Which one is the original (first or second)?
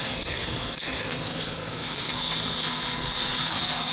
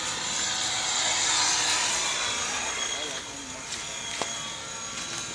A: second